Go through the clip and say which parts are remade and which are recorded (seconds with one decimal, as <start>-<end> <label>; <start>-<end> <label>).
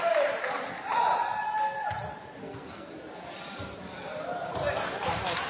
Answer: 0.0-2.4 recorded; 2.4-2.9 remade; 2.9-5.5 recorded